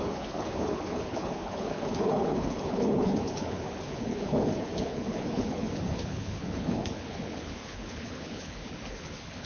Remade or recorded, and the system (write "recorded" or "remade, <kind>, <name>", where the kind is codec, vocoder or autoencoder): remade, codec, HILCodec